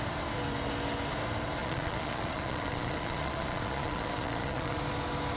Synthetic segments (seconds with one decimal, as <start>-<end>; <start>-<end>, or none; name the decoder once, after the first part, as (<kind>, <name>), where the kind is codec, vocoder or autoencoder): 1.6-4.8 (vocoder, Vocos)